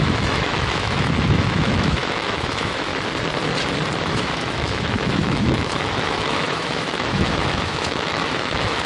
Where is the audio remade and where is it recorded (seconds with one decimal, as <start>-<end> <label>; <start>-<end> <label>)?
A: 0.0-2.9 remade; 2.9-4.0 recorded; 4.0-8.9 remade